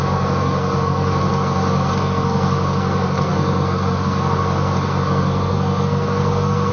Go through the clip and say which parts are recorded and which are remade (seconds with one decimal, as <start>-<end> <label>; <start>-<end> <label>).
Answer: 0.0-6.7 remade